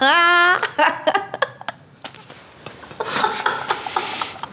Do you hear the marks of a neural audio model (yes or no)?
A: no